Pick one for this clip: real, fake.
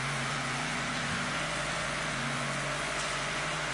fake